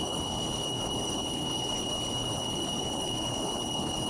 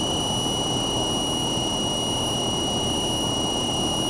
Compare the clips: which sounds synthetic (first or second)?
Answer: first